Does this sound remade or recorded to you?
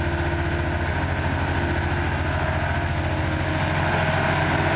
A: recorded